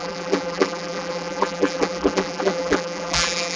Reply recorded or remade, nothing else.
remade